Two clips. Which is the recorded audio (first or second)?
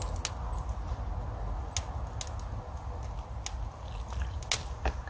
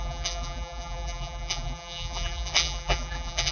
first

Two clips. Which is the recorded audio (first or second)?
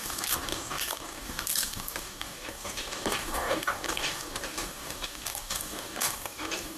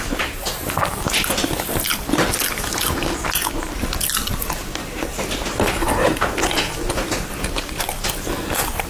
second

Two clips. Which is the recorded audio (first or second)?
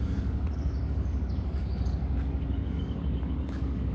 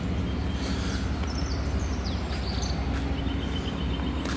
second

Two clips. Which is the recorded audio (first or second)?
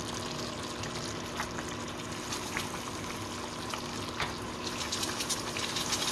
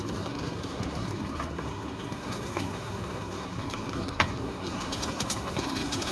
first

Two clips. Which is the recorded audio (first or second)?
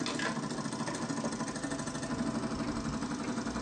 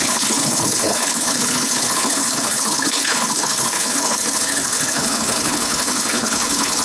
first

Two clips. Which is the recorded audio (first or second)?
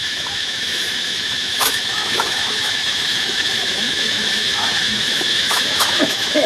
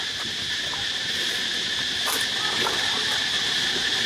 second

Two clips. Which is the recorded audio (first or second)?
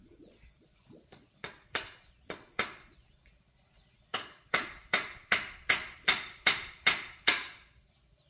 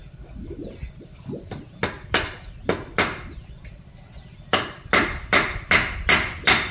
second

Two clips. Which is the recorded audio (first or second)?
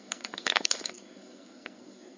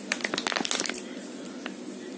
second